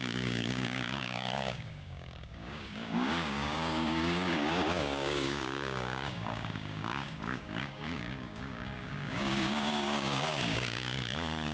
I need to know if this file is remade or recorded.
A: remade